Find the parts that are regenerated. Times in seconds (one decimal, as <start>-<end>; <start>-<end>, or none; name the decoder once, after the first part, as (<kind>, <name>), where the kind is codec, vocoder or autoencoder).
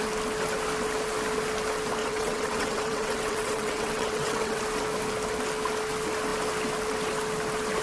2.0-4.6 (vocoder, WaveNeXt)